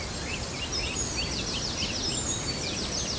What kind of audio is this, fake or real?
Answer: real